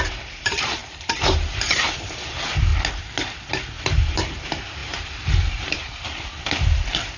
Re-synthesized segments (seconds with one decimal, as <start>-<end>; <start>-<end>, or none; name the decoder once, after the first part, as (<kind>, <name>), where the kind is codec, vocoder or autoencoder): 0.0-2.7 (vocoder, BigVGAN v2); 4.0-7.2